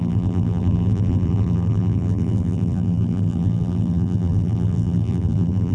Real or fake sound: fake